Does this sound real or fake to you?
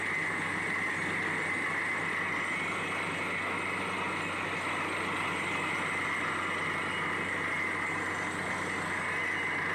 real